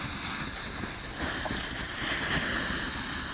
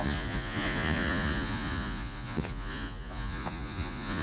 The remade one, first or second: second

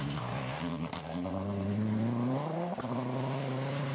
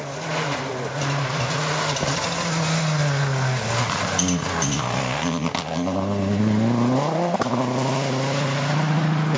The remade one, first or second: first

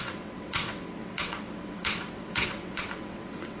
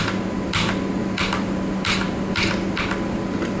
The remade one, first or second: first